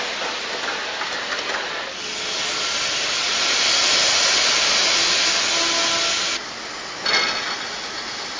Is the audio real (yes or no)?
yes